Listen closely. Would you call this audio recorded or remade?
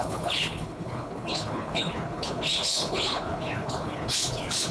remade